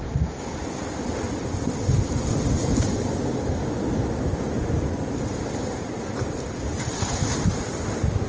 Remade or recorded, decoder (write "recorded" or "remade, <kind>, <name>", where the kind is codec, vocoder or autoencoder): recorded